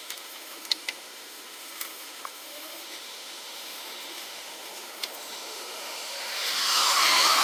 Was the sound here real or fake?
fake